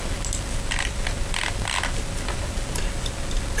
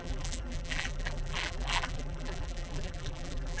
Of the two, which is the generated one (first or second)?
second